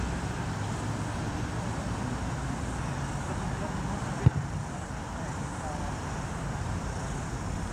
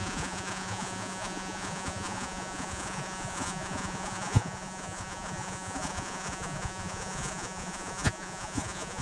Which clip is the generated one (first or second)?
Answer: second